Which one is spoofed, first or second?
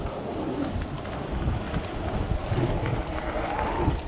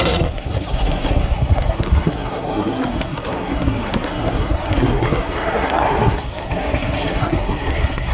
second